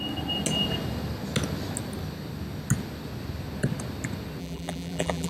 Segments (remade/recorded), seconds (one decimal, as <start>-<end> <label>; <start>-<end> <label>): 0.0-4.4 recorded; 4.4-5.3 remade